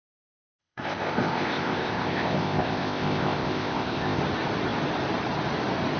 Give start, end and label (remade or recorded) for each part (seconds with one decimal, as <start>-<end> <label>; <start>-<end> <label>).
0.0-0.6 recorded; 0.6-4.2 remade; 4.2-6.0 recorded